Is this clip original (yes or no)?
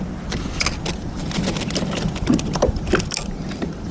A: yes